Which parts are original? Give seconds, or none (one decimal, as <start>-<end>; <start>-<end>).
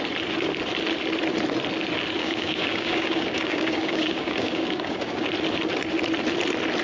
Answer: 0.0-2.2; 5.3-6.8